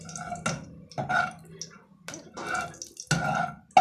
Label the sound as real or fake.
real